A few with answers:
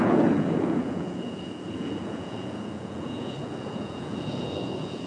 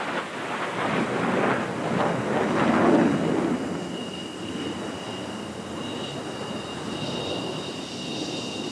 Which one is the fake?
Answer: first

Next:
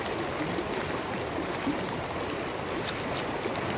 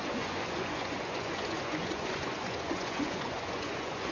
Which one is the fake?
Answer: second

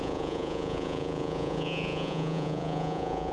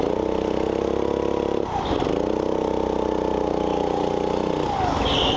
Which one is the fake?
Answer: first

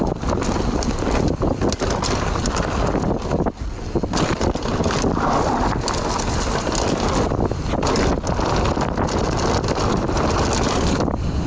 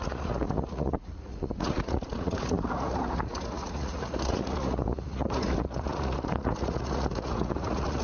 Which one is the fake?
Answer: second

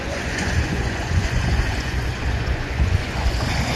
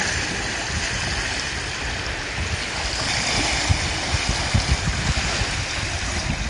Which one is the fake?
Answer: first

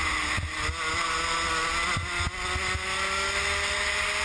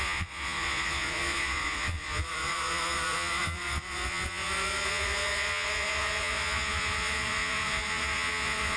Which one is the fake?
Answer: second